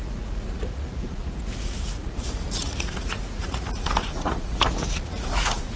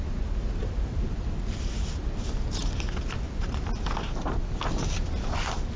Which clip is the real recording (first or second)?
second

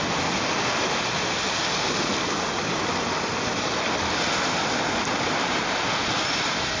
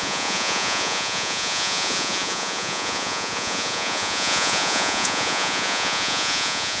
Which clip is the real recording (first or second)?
first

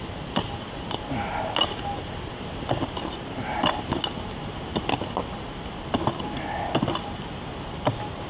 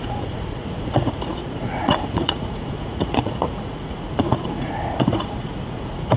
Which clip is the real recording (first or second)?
first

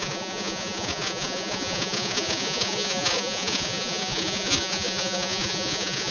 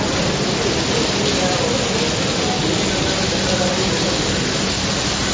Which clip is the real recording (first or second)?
second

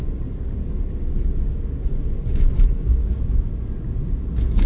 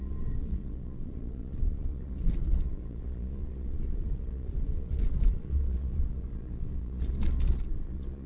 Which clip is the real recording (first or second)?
first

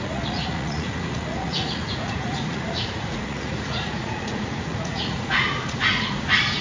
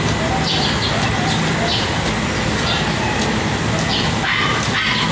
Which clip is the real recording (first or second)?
second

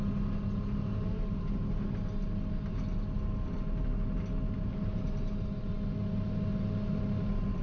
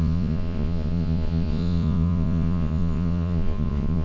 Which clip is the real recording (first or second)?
first